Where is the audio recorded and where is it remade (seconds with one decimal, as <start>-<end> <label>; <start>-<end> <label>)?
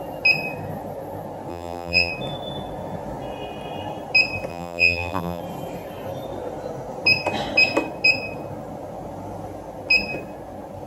0.0-1.5 recorded; 1.5-2.1 remade; 2.1-4.5 recorded; 4.5-5.4 remade; 5.4-10.9 recorded